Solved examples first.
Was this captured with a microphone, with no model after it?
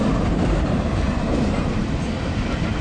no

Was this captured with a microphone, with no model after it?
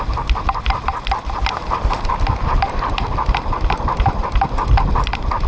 yes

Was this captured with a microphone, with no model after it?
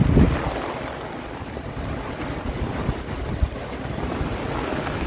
yes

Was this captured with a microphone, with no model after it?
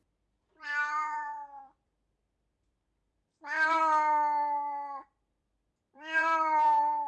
no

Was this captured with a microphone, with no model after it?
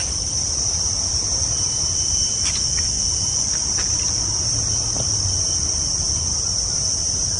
no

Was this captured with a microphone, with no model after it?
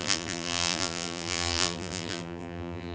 no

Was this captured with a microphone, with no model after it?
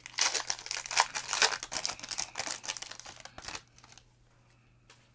yes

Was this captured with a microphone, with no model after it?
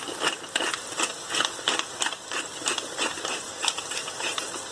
no